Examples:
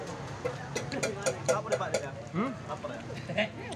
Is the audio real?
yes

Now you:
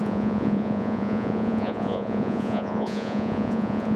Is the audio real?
no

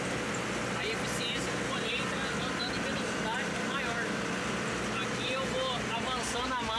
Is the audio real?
yes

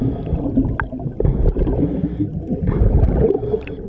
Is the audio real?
yes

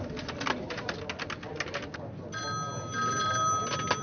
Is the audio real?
yes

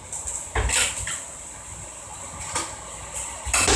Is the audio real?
yes